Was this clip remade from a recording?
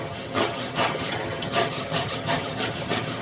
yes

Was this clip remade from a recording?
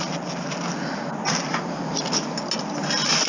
no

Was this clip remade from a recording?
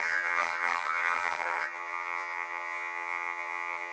yes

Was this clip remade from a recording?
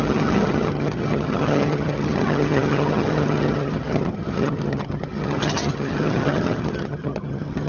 yes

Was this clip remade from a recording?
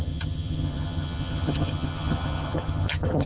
yes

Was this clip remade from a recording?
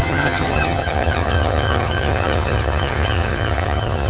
yes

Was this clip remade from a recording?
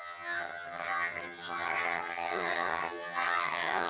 yes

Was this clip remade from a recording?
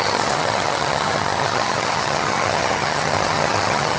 yes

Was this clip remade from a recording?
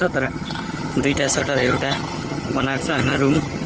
yes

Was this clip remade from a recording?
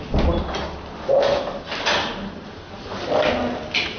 no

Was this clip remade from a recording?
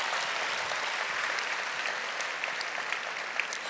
no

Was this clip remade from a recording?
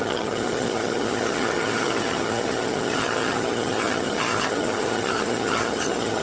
yes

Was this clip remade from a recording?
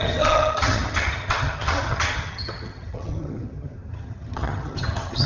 yes